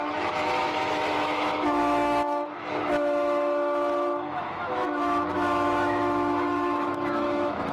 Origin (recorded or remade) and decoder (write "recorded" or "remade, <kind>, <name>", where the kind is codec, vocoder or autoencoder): remade, autoencoder, DAC-VAE